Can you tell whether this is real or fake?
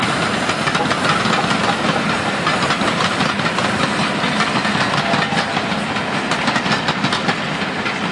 real